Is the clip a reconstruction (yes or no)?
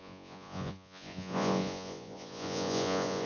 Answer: yes